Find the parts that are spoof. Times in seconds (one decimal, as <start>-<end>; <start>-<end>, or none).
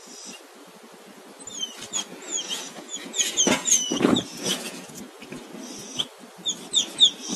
2.1-5.6